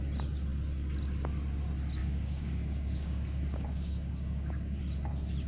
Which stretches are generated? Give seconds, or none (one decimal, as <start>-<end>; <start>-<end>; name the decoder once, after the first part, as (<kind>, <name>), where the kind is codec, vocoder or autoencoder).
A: 2.0-4.8 (codec, DAC)